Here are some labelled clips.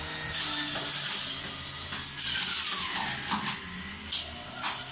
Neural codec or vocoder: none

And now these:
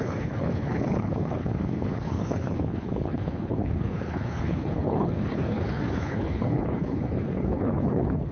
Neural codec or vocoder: codec, HILCodec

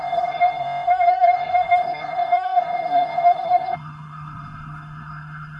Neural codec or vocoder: codec, SNAC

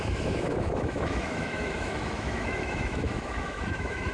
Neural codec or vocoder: autoencoder, DAC-VAE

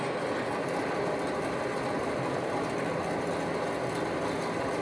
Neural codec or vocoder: none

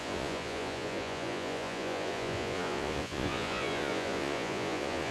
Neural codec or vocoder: vocoder, Vocos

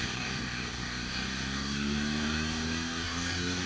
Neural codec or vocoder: codec, DAC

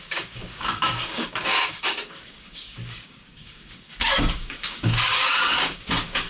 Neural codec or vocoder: codec, DAC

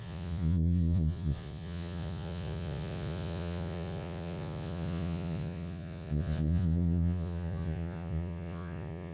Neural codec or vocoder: vocoder, Vocos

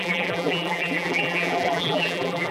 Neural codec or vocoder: vocoder, BigVGAN v2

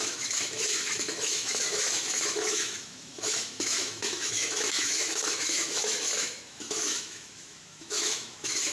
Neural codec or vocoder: autoencoder, DAC-VAE